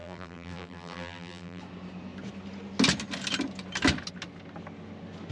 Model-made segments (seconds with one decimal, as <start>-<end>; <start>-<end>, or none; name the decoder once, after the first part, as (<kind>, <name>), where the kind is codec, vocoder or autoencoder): 0.0-1.6 (vocoder, BigVGAN v2)